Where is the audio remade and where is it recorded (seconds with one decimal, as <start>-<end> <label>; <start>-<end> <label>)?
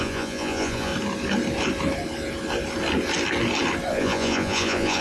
0.0-0.9 remade; 0.9-3.9 recorded; 3.9-5.0 remade